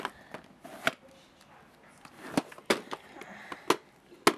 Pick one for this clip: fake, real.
real